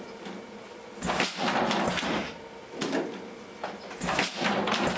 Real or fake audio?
real